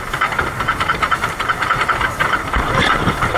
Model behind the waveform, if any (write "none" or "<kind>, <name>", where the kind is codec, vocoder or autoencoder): vocoder, BigVGAN v2